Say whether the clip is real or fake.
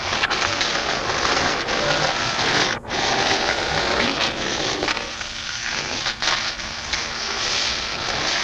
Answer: fake